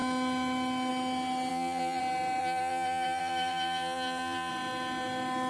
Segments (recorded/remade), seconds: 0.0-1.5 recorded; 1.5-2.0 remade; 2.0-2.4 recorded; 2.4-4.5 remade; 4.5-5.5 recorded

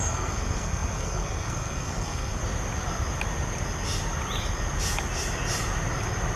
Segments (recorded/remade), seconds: 0.0-2.4 remade; 2.4-6.4 recorded

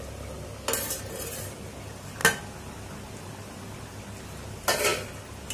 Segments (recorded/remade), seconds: 0.0-5.5 recorded

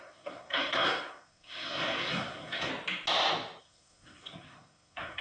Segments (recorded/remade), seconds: 0.0-2.7 remade; 2.7-3.6 recorded; 3.6-5.2 remade